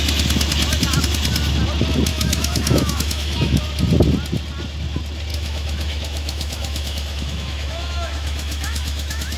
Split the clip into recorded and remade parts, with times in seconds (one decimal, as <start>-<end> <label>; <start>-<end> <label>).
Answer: 0.0-2.1 recorded; 2.1-3.6 remade; 3.6-5.3 recorded; 5.3-9.4 remade